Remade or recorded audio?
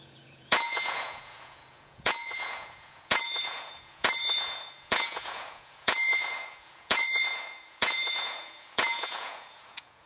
remade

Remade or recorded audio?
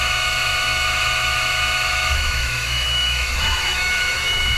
remade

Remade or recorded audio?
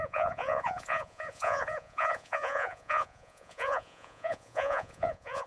remade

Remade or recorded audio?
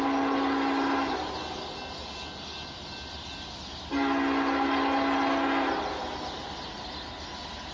recorded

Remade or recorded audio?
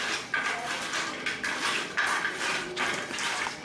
recorded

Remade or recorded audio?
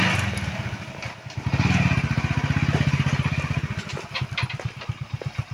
recorded